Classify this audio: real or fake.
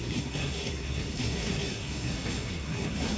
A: fake